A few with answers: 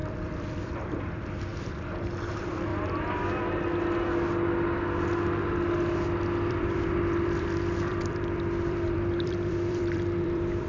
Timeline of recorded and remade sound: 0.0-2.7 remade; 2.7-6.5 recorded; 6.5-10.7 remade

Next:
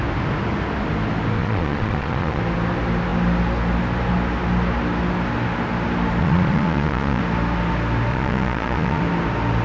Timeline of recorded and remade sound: 0.0-1.4 recorded; 1.4-2.4 remade; 2.4-6.2 recorded; 6.2-7.2 remade; 7.2-8.1 recorded; 8.1-9.0 remade; 9.0-9.6 recorded

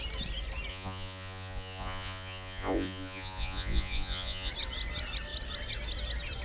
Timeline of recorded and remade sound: 0.0-0.7 recorded; 0.7-4.5 remade; 4.5-6.4 recorded

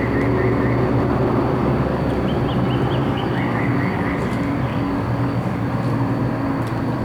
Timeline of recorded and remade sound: 0.0-1.6 recorded; 1.6-2.1 remade; 2.1-3.0 recorded; 3.0-4.2 remade; 4.2-4.7 recorded; 4.7-5.7 remade; 5.7-7.0 recorded

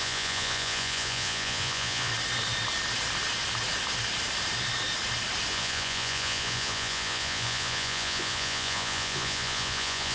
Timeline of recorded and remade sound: 0.0-2.1 remade; 2.1-5.5 recorded; 5.5-10.1 remade

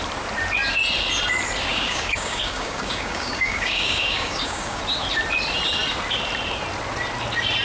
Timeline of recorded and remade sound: 0.0-1.7 recorded; 1.7-4.8 remade; 4.8-7.6 recorded

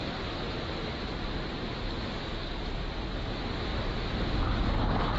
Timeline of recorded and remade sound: 0.0-2.8 remade; 2.8-3.7 recorded; 3.7-4.4 remade; 4.4-5.2 recorded